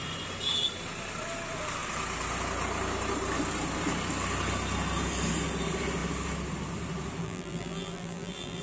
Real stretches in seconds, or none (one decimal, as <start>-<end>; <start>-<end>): 0.0-7.2